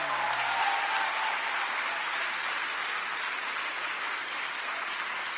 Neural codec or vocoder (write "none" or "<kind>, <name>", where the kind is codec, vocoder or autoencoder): none